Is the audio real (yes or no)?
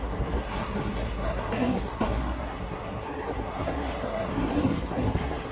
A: no